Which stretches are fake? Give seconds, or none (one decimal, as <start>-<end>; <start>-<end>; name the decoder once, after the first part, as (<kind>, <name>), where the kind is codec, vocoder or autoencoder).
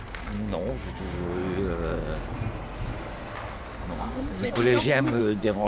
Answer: 0.0-1.4 (codec, DAC); 3.8-5.7